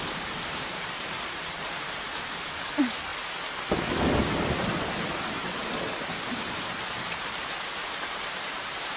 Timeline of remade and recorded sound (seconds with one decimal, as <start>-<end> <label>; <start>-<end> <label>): 0.0-3.1 remade; 3.1-4.1 recorded; 4.1-9.0 remade